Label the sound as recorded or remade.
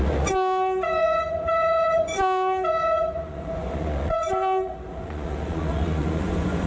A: remade